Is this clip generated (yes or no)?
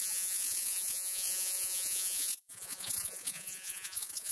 yes